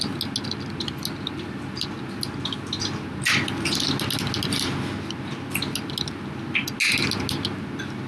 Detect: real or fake real